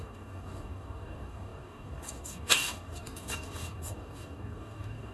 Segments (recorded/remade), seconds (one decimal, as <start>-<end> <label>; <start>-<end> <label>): 0.0-5.1 remade